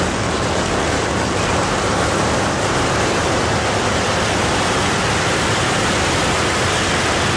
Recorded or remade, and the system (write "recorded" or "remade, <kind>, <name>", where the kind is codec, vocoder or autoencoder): recorded